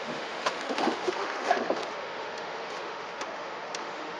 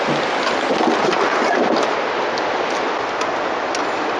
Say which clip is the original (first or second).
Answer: second